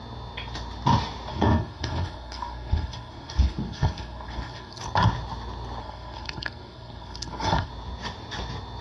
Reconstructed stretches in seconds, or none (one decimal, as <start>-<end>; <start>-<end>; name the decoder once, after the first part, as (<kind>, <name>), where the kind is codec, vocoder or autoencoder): 1.3-4.8 (codec, SNAC); 5.8-7.7

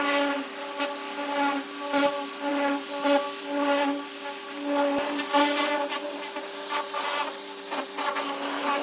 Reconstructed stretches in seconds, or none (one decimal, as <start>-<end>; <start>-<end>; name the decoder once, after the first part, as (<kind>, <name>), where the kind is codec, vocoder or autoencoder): none

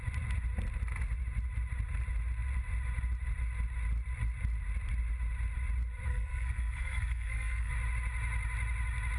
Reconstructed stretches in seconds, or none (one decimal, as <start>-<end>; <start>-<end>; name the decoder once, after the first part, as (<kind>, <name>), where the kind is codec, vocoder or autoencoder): 6.1-7.7 (codec, SNAC)

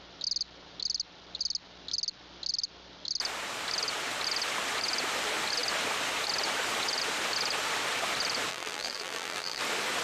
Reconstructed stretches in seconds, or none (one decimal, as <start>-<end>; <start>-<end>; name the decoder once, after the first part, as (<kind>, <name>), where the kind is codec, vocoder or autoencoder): 8.5-9.6 (vocoder, BigVGAN v2)